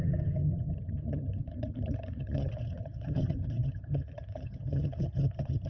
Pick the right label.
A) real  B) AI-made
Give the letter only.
B